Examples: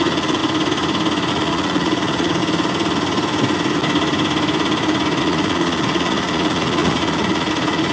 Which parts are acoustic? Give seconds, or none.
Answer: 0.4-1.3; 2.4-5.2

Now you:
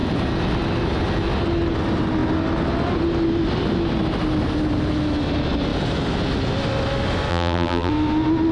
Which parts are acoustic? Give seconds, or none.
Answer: 0.0-7.3; 7.9-8.5

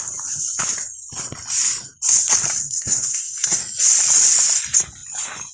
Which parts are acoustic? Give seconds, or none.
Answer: 0.0-2.6; 3.6-5.5

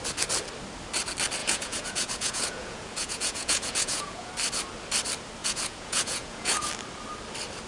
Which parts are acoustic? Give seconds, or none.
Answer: 0.0-1.4; 4.3-5.4; 6.7-7.7